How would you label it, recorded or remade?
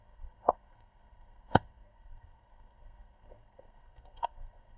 remade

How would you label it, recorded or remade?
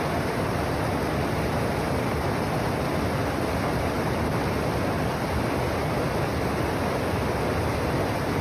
recorded